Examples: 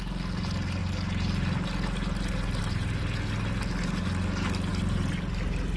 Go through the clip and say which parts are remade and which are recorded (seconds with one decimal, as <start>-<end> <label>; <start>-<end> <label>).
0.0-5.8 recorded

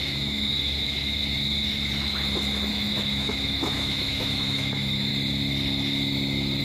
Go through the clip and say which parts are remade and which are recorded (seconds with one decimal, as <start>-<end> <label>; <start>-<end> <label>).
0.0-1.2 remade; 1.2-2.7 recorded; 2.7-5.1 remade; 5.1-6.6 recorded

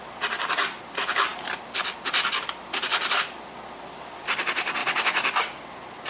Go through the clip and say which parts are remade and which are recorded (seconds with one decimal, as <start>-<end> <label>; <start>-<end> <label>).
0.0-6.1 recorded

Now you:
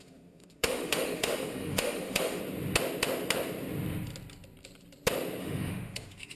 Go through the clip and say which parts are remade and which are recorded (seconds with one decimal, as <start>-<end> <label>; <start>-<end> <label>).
0.0-2.4 remade; 2.4-5.4 recorded; 5.4-6.4 remade

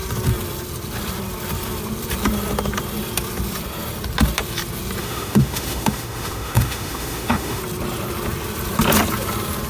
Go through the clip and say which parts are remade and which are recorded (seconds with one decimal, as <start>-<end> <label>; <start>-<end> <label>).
0.0-5.0 recorded; 5.0-7.6 remade; 7.6-9.7 recorded

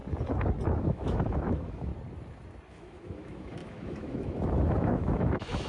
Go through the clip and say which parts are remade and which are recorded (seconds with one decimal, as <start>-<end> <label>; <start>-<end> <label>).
0.0-0.8 recorded; 0.8-1.9 remade; 1.9-2.7 recorded; 2.7-5.7 remade

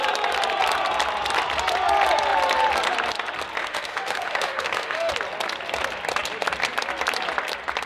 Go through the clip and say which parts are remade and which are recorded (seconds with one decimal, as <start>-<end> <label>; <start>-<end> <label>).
0.0-3.6 recorded; 3.6-5.1 remade; 5.1-7.9 recorded

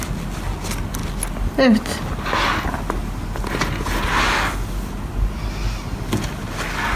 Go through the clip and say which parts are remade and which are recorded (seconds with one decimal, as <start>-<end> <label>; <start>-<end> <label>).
0.0-7.0 recorded